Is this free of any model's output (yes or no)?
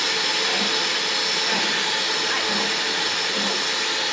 yes